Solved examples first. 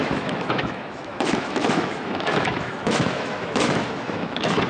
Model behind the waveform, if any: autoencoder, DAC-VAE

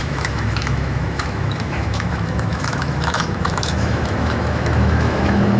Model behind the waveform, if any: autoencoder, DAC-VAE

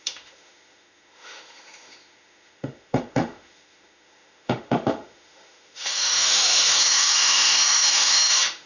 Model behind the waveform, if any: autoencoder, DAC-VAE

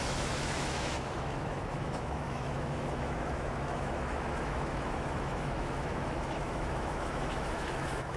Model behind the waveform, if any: autoencoder, DAC-VAE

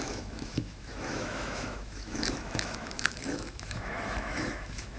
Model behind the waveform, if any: autoencoder, DAC-VAE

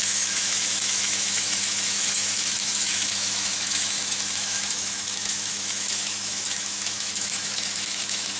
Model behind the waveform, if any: autoencoder, DAC-VAE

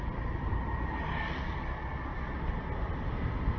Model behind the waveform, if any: none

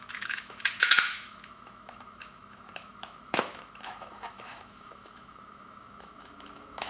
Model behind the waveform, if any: autoencoder, DAC-VAE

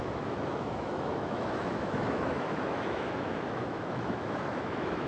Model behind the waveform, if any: autoencoder, DAC-VAE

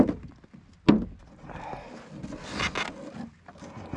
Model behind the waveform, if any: none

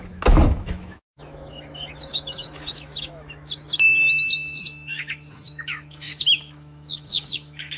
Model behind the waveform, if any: autoencoder, DAC-VAE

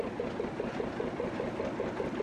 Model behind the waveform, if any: none